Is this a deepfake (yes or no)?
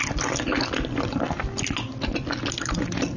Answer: no